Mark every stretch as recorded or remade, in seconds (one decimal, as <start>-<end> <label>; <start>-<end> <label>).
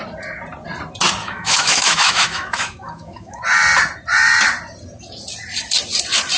0.0-1.2 recorded; 1.2-3.4 remade; 3.4-6.4 recorded